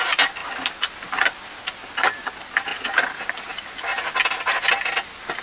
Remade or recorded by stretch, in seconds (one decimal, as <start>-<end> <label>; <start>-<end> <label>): 0.0-5.4 recorded